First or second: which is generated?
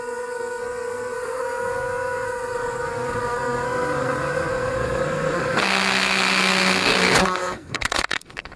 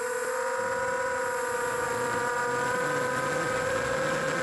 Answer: first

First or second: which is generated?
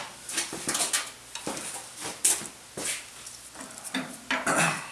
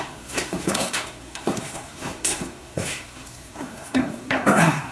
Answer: second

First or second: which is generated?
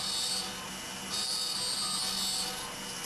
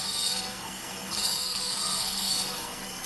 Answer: second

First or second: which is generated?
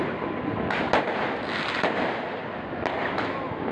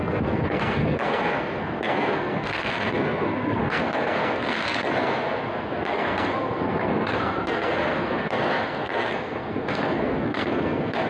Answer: second